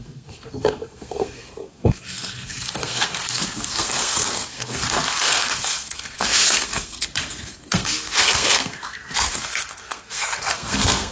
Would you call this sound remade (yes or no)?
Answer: yes